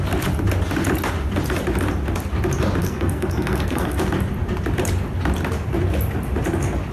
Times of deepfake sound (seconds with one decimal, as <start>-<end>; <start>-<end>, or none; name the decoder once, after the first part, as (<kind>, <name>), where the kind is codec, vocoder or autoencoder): 2.8-4.0 (codec, SNAC)